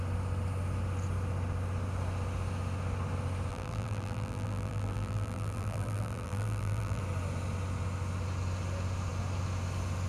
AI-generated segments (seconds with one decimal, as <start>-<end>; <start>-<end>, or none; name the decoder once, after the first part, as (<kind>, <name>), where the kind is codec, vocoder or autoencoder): 3.5-7.0 (vocoder, BigVGAN v2)

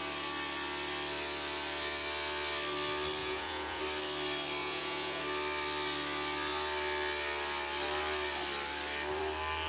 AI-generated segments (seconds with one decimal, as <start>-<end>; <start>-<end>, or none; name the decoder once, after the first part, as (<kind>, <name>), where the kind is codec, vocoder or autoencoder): 3.2-3.8 (vocoder, Vocos); 4.6-5.2

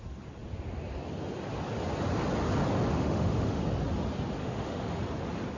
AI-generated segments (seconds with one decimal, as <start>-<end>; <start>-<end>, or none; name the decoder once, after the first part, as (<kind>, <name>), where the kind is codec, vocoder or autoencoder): 2.9-3.6 (autoencoder, DAC-VAE); 4.4-5.0

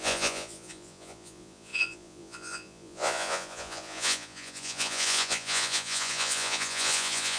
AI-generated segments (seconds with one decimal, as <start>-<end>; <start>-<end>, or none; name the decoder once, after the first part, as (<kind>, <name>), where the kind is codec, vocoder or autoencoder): 0.0-7.4 (vocoder, Vocos)

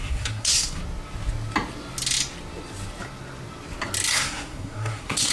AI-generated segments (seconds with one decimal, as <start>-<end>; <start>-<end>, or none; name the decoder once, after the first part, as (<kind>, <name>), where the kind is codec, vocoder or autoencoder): 0.0-0.8 (codec, SNAC); 4.1-5.3

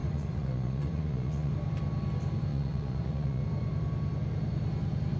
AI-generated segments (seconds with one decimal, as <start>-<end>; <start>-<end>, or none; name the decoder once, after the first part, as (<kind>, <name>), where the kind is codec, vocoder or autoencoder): 0.0-1.5 (vocoder, Vocos); 2.5-3.4

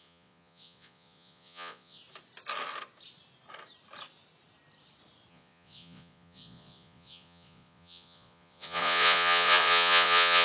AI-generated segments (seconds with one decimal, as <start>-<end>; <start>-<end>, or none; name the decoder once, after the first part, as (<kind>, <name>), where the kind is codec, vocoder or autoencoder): 0.0-2.0 (vocoder, Vocos); 5.3-10.4